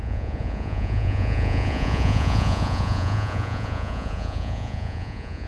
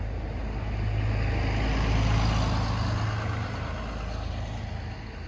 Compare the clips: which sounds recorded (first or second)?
second